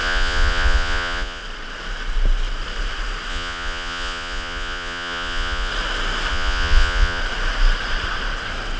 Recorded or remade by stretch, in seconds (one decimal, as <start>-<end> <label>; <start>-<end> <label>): 0.0-1.4 remade; 1.4-3.3 recorded; 3.3-5.7 remade; 5.7-6.3 recorded; 6.3-7.2 remade; 7.2-8.8 recorded